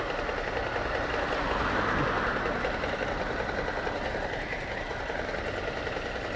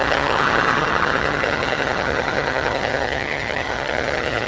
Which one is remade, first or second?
second